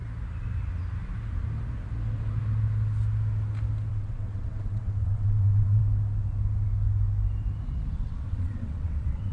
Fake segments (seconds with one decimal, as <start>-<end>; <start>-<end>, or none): 3.9-5.8; 7.9-9.3